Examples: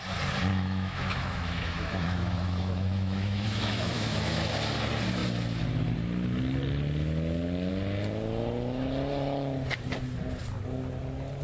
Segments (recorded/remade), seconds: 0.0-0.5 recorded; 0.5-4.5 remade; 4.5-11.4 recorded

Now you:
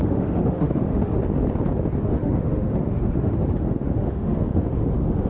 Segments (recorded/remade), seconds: 0.0-1.2 remade; 1.2-2.0 recorded; 2.0-5.3 remade

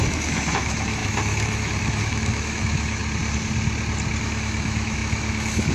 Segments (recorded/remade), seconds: 0.0-3.0 remade; 3.0-4.2 recorded; 4.2-5.7 remade

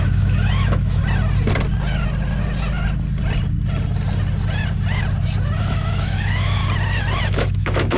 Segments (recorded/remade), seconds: 0.0-1.0 remade; 1.0-5.6 recorded; 5.6-6.6 remade; 6.6-7.2 recorded; 7.2-8.0 remade

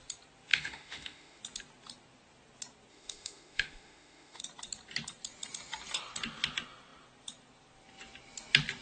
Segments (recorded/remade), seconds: 0.0-0.5 recorded; 0.5-1.4 remade; 1.4-2.9 recorded; 2.9-4.4 remade; 4.4-8.8 recorded

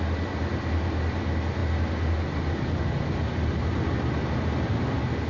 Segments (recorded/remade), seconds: 0.0-5.3 recorded

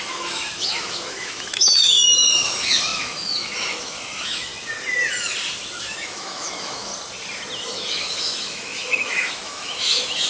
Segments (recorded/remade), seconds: 0.0-4.5 remade; 4.5-5.8 recorded; 5.8-6.9 remade; 6.9-7.7 recorded; 7.7-10.3 remade